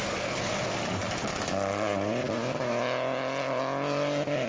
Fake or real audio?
real